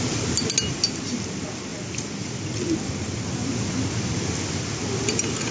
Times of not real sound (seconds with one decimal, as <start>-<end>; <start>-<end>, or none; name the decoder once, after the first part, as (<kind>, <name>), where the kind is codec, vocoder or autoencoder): none